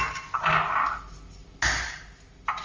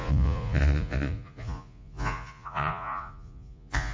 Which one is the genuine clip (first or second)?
first